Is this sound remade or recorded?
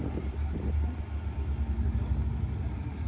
recorded